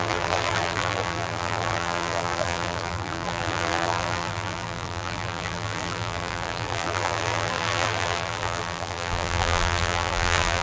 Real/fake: fake